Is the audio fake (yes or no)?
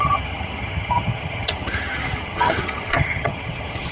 yes